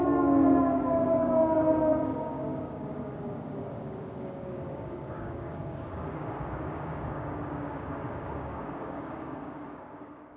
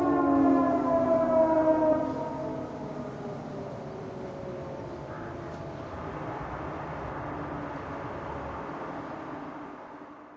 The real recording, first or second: second